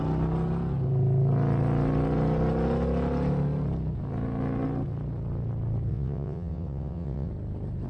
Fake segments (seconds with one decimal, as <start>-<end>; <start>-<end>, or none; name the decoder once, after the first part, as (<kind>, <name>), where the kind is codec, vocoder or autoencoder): 5.9-7.3 (vocoder, WaveNeXt)